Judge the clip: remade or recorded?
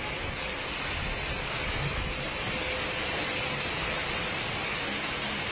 recorded